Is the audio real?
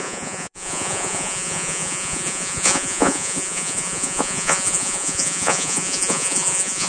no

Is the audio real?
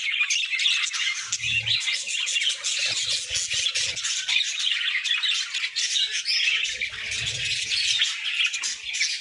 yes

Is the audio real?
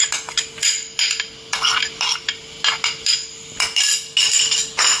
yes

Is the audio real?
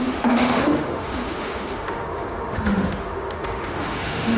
no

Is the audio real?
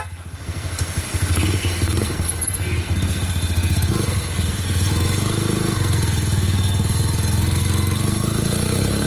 no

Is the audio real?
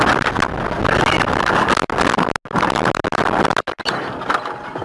yes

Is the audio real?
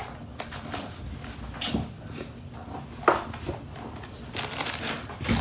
yes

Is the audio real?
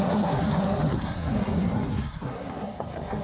no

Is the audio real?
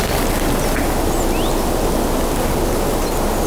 yes